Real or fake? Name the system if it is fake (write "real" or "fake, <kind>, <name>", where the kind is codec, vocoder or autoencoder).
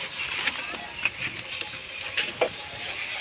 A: real